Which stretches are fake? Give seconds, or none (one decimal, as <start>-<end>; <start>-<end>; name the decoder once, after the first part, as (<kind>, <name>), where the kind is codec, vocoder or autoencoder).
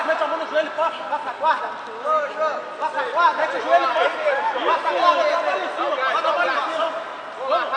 none